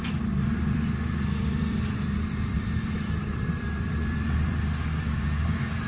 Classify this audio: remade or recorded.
remade